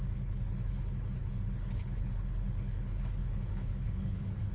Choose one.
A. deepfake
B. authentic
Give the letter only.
A